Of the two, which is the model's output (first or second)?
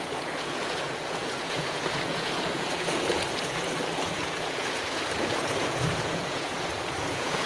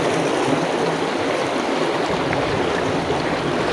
first